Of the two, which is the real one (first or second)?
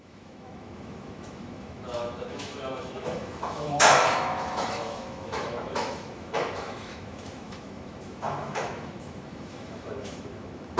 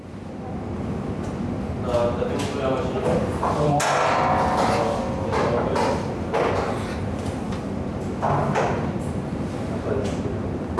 second